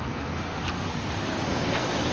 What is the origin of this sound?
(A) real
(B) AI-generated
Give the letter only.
B